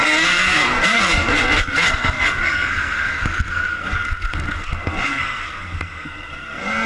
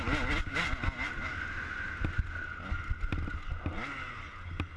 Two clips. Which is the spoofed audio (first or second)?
first